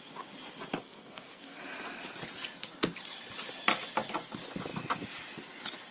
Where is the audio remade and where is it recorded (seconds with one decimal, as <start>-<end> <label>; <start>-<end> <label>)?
0.0-0.8 recorded; 0.8-1.6 remade; 1.6-5.9 recorded

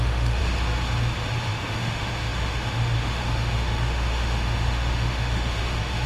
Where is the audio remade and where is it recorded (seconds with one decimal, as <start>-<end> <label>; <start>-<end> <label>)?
0.0-0.4 remade; 0.4-1.5 recorded; 1.5-6.1 remade

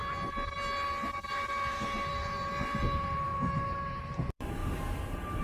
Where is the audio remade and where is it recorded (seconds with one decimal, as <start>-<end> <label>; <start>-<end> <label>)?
0.0-1.3 recorded; 1.3-5.4 remade

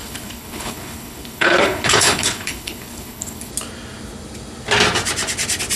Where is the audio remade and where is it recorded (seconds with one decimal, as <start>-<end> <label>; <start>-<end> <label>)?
0.0-3.5 remade; 3.5-5.8 recorded

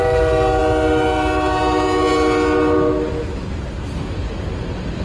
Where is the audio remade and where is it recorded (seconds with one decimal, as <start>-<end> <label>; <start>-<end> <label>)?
0.0-5.0 recorded

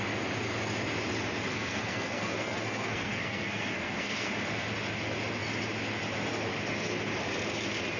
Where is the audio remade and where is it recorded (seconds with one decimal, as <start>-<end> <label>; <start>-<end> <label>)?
0.0-1.5 recorded; 1.5-4.3 remade; 4.3-8.0 recorded

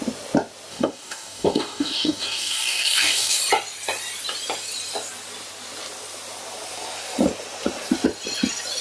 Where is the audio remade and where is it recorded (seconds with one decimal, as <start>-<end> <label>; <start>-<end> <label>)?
0.0-0.7 recorded; 0.7-3.4 remade; 3.4-8.8 recorded

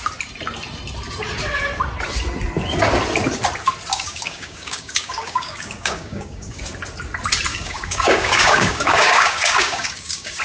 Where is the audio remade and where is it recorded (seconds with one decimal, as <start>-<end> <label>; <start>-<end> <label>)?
0.0-3.9 recorded; 3.9-6.6 remade; 6.6-7.5 recorded; 7.5-10.4 remade